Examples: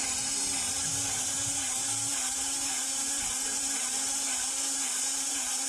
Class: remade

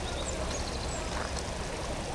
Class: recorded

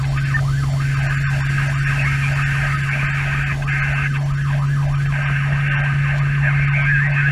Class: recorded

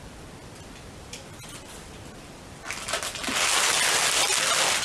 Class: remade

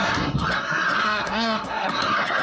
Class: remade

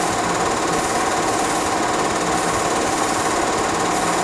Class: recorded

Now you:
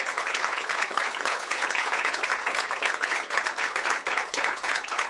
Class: remade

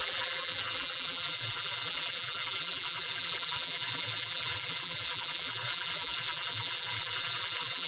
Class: remade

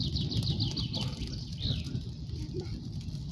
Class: recorded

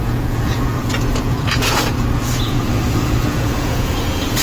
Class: remade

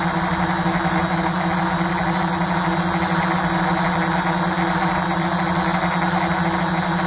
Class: recorded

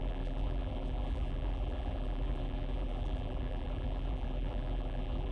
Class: remade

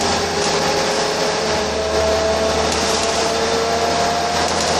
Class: recorded